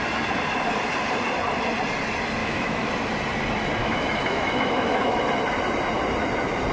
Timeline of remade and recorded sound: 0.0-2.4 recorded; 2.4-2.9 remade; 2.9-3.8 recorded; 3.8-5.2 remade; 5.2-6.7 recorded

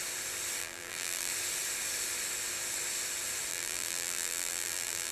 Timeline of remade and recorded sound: 0.0-0.6 recorded; 0.6-1.3 remade; 1.3-3.5 recorded; 3.5-5.1 remade

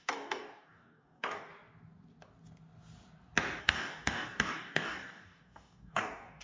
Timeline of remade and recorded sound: 0.0-1.5 remade; 1.5-3.6 recorded; 3.6-6.4 remade

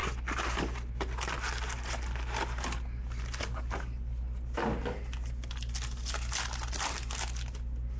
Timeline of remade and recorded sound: 0.0-8.0 recorded